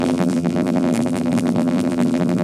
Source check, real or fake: fake